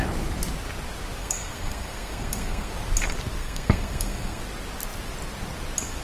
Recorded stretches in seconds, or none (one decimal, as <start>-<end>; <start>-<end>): 0.0-1.2; 2.7-3.4; 4.4-6.0